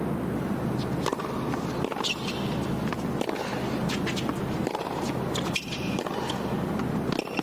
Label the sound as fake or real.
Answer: real